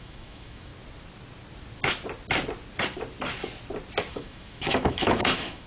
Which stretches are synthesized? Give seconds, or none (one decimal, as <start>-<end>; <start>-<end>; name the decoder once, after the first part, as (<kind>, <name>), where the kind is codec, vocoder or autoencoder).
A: 0.0-0.7 (autoencoder, DAC-VAE); 4.1-5.7